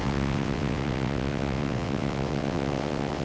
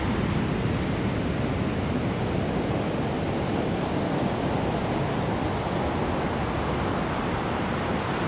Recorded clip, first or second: second